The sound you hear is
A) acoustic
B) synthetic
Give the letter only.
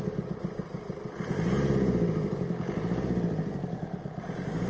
A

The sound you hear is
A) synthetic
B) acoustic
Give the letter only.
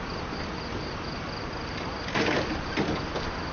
B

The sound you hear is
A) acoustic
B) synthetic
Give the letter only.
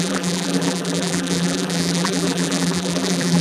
B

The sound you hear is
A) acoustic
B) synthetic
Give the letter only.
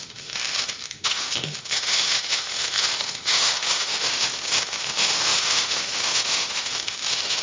B